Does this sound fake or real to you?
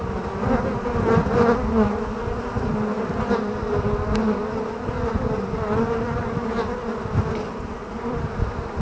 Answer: real